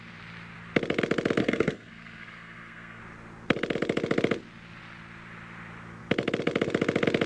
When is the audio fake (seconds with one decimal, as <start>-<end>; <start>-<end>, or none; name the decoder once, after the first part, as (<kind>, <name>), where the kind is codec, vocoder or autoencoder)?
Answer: 1.4-3.0 (codec, SNAC)